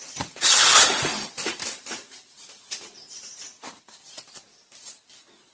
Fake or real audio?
fake